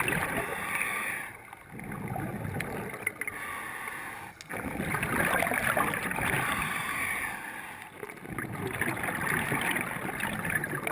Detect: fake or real real